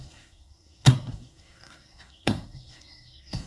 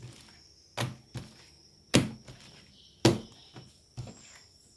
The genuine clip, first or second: second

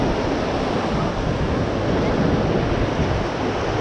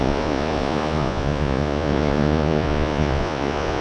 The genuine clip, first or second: first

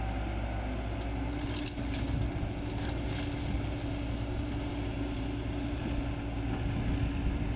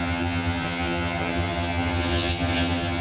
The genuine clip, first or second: first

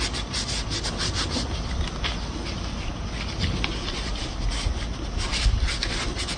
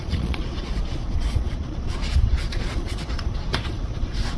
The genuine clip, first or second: first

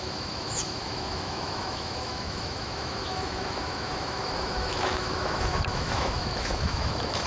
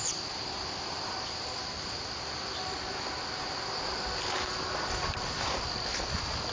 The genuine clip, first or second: second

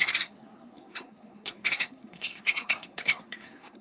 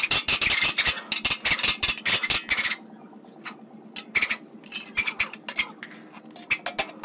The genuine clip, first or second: second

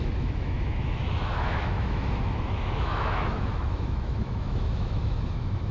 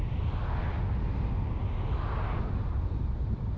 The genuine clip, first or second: second